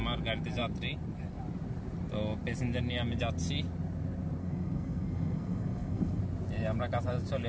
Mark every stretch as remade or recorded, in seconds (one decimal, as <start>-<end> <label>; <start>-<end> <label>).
0.0-4.4 recorded; 4.4-6.2 remade; 6.2-7.5 recorded